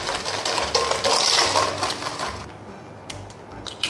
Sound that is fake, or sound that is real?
real